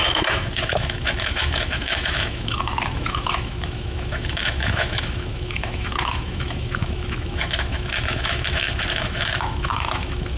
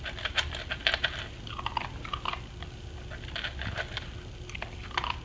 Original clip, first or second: second